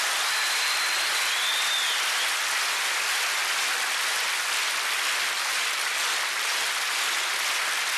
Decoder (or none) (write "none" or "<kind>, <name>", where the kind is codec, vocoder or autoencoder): none